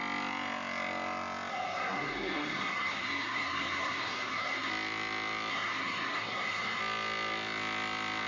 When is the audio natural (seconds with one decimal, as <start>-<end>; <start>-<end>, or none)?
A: 0.0-1.5; 4.7-5.5; 6.8-8.3